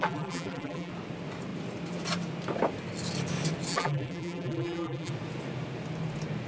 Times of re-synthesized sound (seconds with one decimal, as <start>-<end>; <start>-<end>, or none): 0.0-0.9; 3.7-5.1